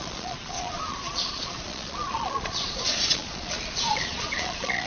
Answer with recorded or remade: remade